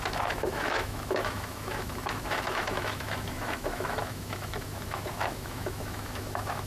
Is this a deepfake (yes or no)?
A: yes